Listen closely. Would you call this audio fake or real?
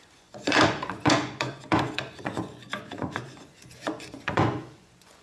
fake